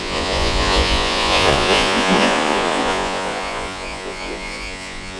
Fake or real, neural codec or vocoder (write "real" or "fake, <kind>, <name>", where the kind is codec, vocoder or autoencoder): fake, vocoder, Vocos